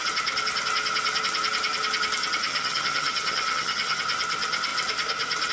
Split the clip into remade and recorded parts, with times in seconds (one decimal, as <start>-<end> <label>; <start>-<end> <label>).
0.0-2.5 recorded; 2.5-4.0 remade; 4.0-5.5 recorded